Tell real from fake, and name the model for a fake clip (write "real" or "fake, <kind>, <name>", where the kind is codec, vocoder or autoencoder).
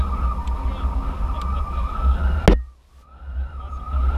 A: real